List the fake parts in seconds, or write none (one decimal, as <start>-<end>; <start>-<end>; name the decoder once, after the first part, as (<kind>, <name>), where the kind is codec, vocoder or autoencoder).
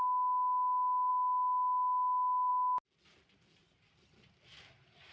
none